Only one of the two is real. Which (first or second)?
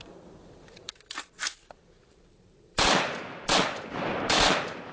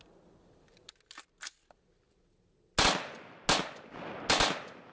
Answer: second